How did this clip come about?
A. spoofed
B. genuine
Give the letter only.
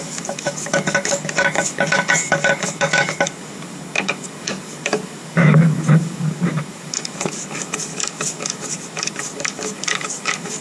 A